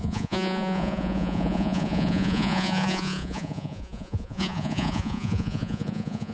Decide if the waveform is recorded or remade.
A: remade